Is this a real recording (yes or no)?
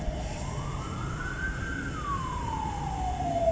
yes